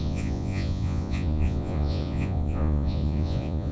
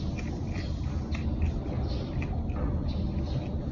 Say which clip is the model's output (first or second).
first